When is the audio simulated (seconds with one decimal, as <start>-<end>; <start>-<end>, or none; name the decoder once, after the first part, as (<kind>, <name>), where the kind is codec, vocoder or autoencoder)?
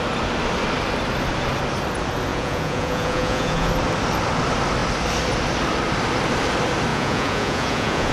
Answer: 2.3-3.7 (vocoder, Vocos); 6.9-8.1